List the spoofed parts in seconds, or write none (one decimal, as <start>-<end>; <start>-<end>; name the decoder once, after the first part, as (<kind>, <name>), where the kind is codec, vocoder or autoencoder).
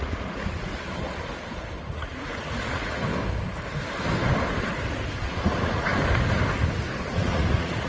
0.0-0.7 (vocoder, Vocos); 1.8-3.1; 5.2-5.9; 7.0-7.9